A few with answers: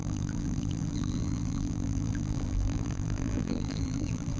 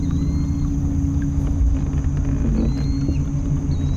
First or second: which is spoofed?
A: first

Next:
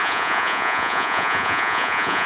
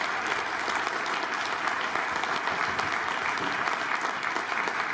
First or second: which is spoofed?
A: first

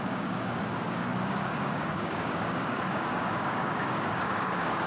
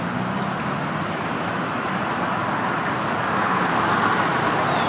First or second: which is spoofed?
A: first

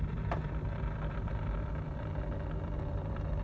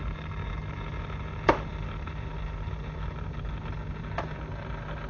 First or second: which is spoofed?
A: first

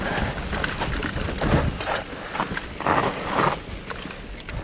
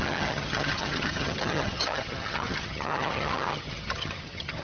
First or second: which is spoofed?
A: second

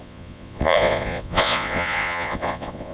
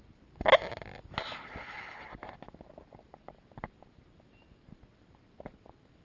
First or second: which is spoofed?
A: first